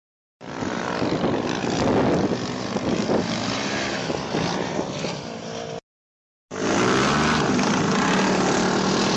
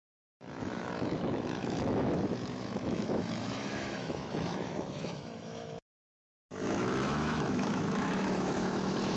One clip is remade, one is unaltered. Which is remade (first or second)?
second